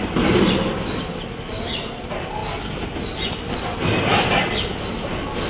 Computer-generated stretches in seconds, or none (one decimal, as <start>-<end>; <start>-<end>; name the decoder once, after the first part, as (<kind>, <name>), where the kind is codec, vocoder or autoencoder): 2.4-3.0 (vocoder, BigVGAN v2); 4.1-4.7